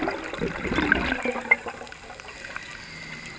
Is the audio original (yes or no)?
yes